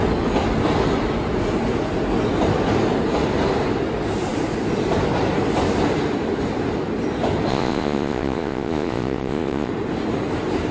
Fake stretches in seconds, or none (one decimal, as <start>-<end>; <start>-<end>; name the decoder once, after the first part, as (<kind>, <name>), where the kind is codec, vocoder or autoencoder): 7.5-9.7 (vocoder, Vocos)